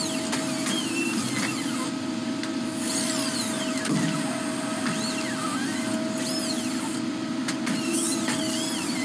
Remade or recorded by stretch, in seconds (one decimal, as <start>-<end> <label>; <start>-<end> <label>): 0.0-9.0 recorded